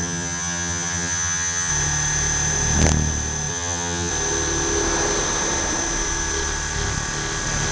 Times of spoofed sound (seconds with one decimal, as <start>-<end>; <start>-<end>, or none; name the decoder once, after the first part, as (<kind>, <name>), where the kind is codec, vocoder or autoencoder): 0.0-1.7 (vocoder, HiFi-GAN); 3.5-4.1